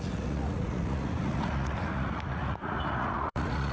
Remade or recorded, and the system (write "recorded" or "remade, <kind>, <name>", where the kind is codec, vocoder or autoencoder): remade, vocoder, Vocos